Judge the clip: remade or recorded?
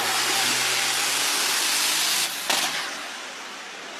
recorded